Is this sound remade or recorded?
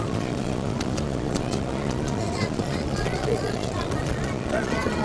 remade